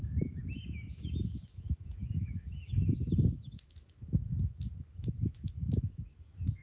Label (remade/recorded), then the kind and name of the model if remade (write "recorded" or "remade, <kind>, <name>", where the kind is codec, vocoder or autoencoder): remade, autoencoder, DAC-VAE